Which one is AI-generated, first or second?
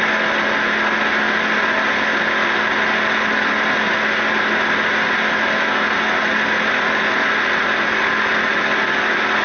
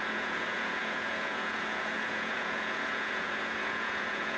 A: second